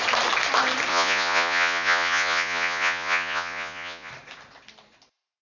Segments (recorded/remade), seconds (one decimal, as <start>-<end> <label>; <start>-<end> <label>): 0.0-0.9 recorded; 0.9-4.1 remade; 4.1-5.4 recorded